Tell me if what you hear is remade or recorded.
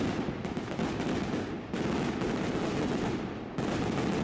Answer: recorded